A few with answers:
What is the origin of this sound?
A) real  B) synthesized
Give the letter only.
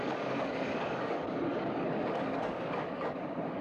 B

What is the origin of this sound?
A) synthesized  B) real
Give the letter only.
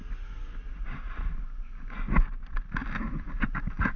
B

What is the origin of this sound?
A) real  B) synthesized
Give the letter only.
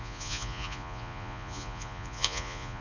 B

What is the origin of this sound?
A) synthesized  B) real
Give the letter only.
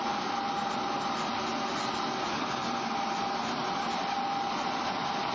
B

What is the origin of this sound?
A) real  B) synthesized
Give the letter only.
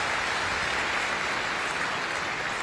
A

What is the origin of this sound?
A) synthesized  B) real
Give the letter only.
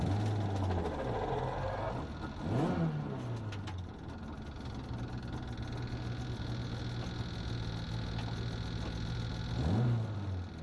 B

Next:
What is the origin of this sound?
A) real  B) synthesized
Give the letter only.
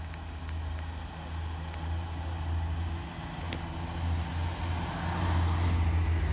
A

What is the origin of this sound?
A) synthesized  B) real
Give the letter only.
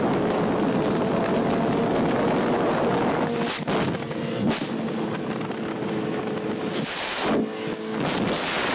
B